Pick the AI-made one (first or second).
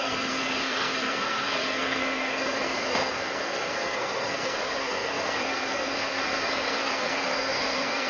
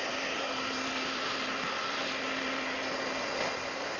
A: first